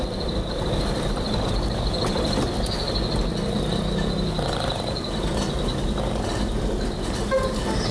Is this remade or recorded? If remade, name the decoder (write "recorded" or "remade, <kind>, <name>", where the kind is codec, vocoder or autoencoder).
recorded